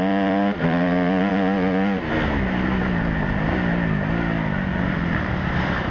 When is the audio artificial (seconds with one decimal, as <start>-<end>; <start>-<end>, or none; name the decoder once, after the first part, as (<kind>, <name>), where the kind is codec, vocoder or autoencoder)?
0.0-1.3 (vocoder, BigVGAN v2); 4.8-5.9